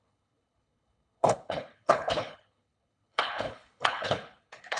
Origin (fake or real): fake